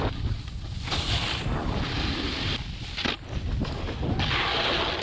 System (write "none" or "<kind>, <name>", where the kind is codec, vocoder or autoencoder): none